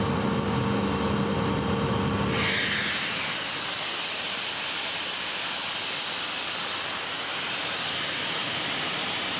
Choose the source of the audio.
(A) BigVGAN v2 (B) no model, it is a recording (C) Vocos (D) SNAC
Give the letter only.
B